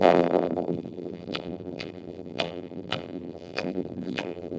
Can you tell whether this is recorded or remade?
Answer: remade